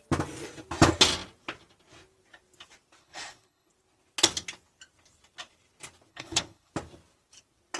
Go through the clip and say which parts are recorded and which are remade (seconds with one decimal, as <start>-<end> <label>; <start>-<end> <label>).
0.0-3.0 recorded; 3.0-3.7 remade; 3.7-6.1 recorded; 6.1-6.7 remade; 6.7-7.8 recorded